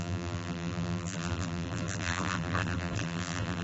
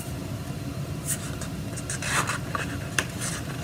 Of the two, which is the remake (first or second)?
first